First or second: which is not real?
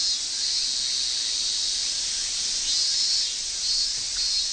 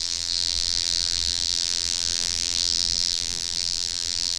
second